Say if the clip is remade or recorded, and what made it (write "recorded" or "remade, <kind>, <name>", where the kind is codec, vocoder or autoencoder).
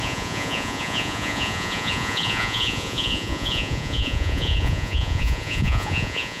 remade, vocoder, Vocos